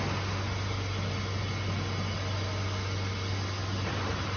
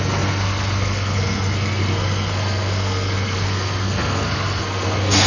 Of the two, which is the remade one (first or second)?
second